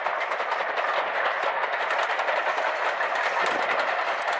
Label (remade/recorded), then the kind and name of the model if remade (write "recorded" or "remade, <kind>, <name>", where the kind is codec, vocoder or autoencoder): recorded